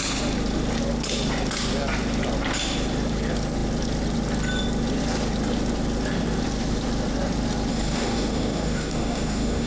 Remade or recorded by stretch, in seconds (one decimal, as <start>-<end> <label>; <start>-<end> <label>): 0.0-7.7 recorded; 7.7-9.7 remade